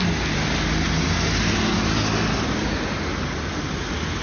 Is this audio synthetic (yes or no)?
no